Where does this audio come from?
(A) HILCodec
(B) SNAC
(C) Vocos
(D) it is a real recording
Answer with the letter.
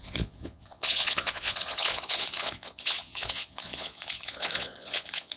C